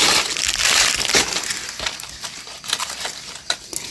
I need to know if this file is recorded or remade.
recorded